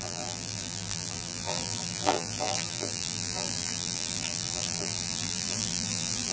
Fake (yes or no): yes